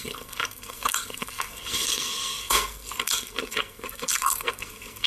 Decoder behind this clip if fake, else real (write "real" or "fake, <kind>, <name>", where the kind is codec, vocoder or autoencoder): fake, codec, SNAC